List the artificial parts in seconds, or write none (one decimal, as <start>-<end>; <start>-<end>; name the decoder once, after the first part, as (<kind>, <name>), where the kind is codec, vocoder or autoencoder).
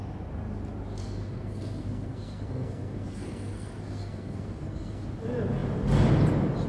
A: 1.0-5.0 (codec, SNAC)